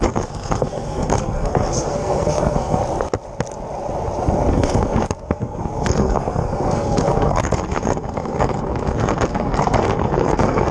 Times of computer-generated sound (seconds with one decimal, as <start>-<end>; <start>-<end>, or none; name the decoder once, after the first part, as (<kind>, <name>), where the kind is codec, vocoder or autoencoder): 0.0-2.8 (codec, SNAC); 4.5-10.7